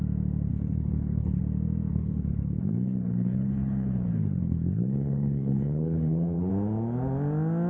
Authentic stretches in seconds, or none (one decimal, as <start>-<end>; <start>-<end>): 0.0-0.5; 1.4-1.9; 6.5-7.7